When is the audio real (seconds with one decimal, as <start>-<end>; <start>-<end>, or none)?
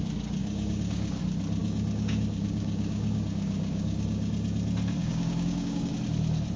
0.0-0.4; 1.2-1.6; 4.3-5.0; 5.9-6.6